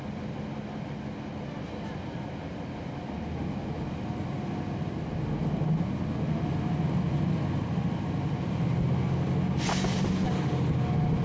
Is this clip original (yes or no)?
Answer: yes